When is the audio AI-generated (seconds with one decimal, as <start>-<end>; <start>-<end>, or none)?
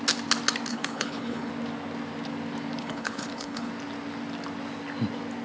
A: 0.7-1.5; 2.8-3.7